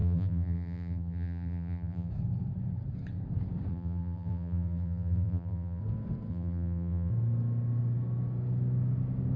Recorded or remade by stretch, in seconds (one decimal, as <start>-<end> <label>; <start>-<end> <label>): 0.0-2.1 remade; 2.1-3.7 recorded; 3.7-5.8 remade; 5.8-6.3 recorded; 6.3-7.1 remade; 7.1-9.4 recorded